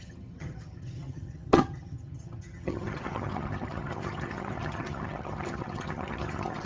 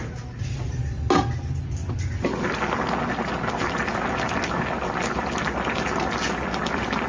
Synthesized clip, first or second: first